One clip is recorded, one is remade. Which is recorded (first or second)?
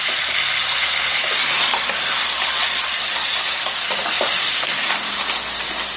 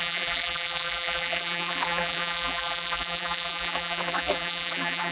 first